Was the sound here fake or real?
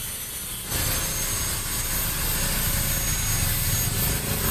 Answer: real